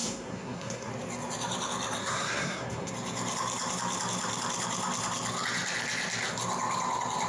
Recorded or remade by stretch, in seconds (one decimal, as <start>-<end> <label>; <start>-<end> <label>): 0.0-0.9 remade; 0.9-2.0 recorded; 2.0-2.9 remade; 2.9-7.3 recorded